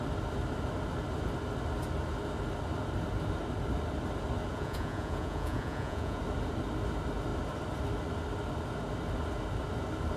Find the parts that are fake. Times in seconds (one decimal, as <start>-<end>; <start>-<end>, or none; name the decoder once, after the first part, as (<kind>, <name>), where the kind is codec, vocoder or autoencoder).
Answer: 4.5-6.2 (vocoder, Vocos)